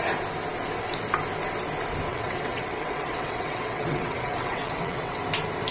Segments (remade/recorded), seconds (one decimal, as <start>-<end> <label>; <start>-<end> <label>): 0.0-2.1 recorded; 2.1-5.2 remade; 5.2-5.7 recorded